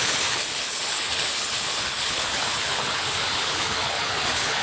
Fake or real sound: fake